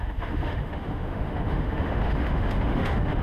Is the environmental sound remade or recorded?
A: remade